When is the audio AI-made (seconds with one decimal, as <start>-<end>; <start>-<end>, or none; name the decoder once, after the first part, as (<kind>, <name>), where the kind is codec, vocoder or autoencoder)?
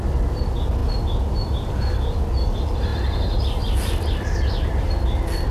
none